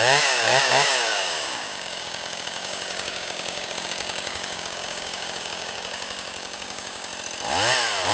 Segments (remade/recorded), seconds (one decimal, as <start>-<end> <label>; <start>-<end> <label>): 0.0-7.1 remade; 7.1-8.1 recorded